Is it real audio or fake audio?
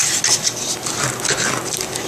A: real